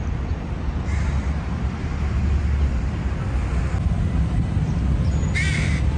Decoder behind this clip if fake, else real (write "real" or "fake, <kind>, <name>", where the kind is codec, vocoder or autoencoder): real